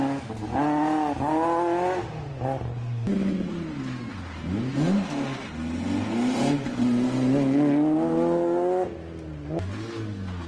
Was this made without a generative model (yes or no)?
yes